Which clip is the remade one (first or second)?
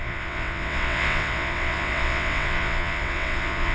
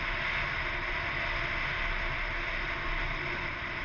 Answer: first